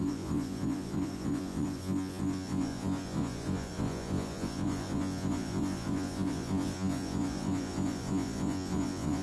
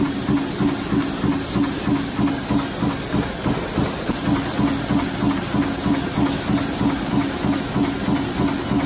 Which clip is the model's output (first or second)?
first